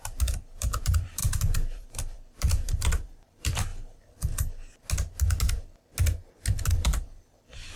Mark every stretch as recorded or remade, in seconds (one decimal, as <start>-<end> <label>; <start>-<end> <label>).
0.0-3.7 remade; 3.7-6.7 recorded; 6.7-7.8 remade